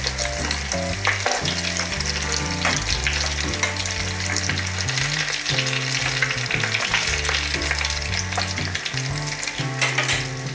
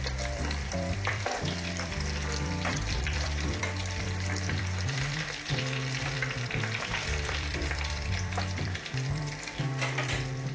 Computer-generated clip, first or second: second